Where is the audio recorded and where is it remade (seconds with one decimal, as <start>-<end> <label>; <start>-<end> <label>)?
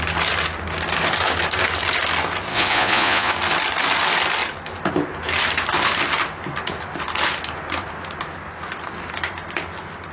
0.0-2.5 recorded; 2.5-3.3 remade; 3.3-10.1 recorded